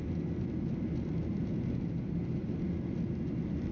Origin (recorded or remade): recorded